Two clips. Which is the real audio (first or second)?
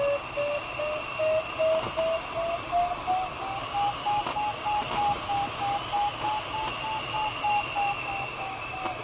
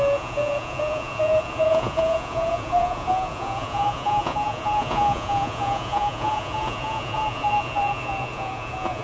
first